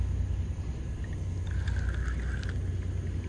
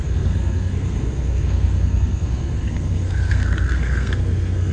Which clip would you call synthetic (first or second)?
second